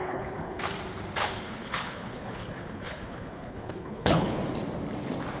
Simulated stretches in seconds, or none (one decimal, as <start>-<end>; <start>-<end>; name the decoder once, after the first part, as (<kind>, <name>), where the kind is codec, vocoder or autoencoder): 0.0-0.6 (codec, HILCodec); 1.2-4.4